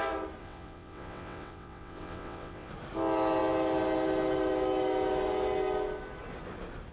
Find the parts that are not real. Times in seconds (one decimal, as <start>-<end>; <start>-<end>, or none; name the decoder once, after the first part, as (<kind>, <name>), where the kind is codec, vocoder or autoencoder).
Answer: 0.4-2.7 (vocoder, WaveNeXt)